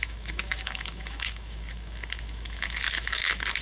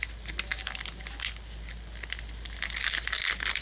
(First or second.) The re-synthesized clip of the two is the first